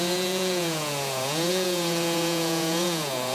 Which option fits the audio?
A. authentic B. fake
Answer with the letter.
B